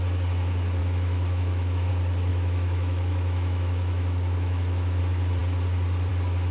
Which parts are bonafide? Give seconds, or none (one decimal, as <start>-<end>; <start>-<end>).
0.0-0.8; 1.9-2.3; 5.0-6.5